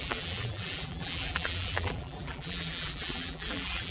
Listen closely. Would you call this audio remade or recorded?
remade